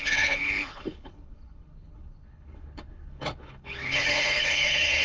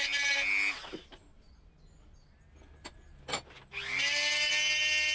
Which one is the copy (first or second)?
first